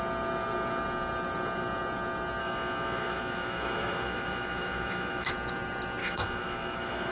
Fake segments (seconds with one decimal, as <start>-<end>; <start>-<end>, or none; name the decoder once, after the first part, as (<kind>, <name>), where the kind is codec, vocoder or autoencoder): 2.4-5.3 (autoencoder, DAC-VAE); 6.0-7.1